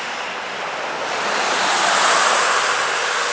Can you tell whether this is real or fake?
real